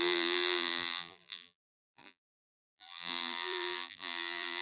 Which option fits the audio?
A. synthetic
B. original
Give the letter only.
A